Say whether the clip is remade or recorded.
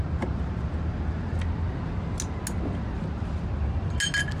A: recorded